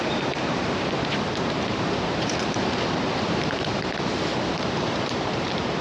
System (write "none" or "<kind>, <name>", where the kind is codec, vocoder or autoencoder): vocoder, BigVGAN v2